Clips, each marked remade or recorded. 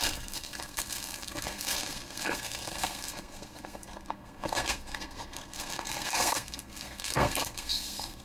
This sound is remade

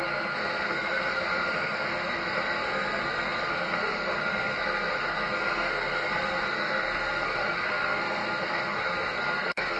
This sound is remade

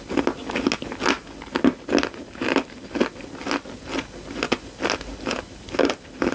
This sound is recorded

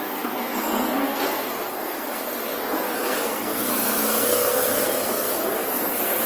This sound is remade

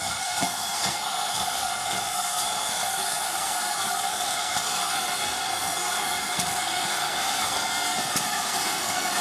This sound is remade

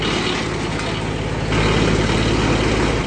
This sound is recorded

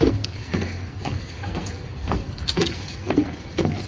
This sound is remade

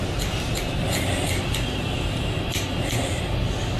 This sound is recorded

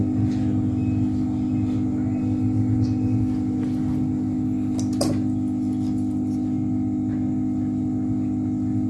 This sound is recorded